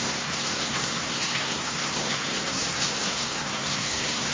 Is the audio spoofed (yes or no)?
yes